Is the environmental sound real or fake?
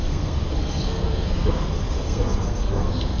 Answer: fake